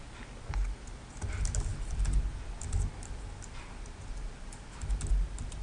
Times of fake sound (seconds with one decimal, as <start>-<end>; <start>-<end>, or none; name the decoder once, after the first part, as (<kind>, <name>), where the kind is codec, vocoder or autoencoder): none

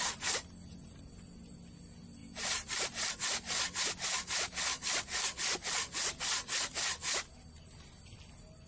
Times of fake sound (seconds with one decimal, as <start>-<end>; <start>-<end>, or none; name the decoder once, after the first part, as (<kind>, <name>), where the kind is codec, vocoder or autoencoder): none

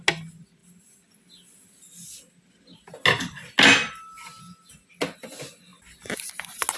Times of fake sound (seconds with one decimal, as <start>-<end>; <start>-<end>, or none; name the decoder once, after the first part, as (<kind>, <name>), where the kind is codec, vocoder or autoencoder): none

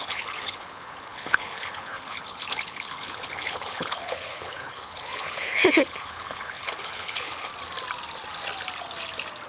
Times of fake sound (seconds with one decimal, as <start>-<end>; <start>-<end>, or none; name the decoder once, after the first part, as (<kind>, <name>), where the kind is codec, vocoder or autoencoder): 0.0-7.5 (codec, HILCodec)

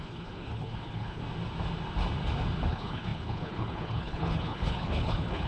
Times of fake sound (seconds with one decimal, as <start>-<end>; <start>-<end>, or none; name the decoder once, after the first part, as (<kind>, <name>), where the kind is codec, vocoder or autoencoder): 0.0-1.2 (codec, HILCodec); 2.7-5.5